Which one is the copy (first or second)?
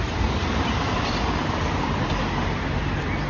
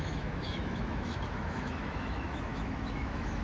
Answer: second